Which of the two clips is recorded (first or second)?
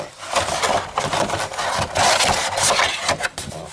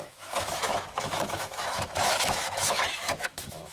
first